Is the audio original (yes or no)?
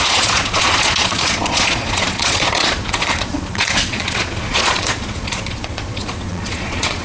no